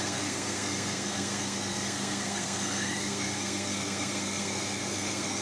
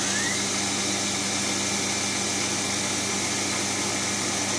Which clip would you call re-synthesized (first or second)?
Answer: first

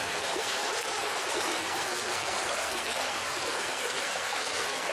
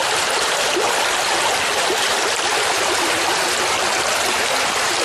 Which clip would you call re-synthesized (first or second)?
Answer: first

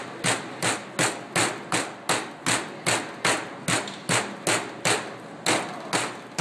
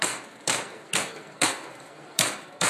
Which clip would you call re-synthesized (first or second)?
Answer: second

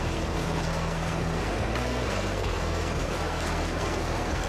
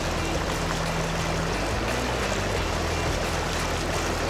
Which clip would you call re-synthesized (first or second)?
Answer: first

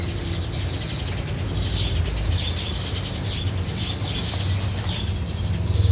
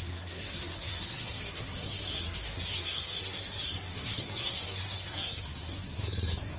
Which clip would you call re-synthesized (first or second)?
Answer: second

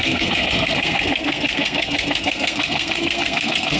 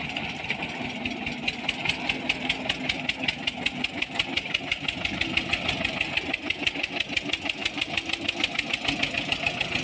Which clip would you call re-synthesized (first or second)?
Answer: first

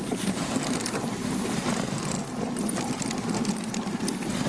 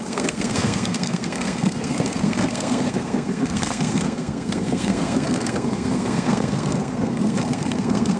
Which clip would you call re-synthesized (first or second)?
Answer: second